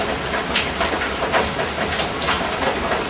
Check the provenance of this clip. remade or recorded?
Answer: recorded